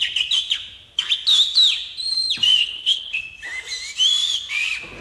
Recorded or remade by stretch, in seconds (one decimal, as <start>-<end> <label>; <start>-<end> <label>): 0.0-2.6 recorded; 2.6-3.2 remade; 3.2-5.0 recorded